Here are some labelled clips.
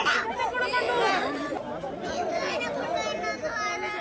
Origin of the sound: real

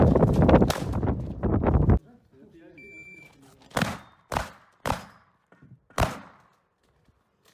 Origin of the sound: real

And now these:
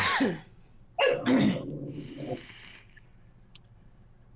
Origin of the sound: real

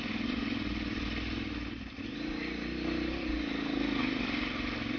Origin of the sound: real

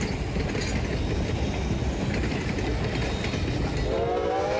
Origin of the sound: real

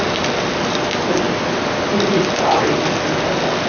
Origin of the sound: real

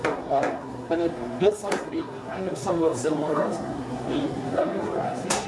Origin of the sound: fake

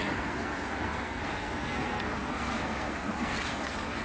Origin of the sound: fake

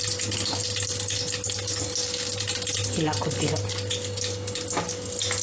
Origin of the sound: real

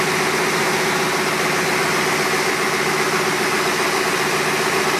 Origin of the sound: real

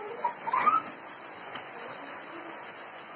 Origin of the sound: fake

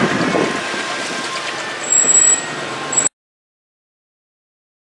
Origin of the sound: real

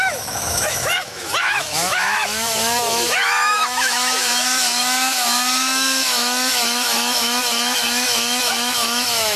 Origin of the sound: fake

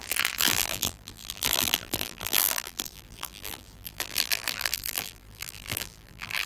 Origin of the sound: fake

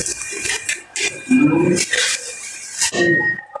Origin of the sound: real